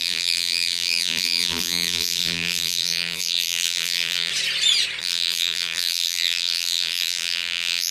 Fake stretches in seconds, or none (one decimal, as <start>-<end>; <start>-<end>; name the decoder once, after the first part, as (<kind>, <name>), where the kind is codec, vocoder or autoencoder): 0.0-4.3 (vocoder, BigVGAN v2); 5.0-7.9